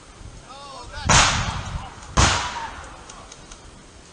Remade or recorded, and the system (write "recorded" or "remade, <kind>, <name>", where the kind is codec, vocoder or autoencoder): recorded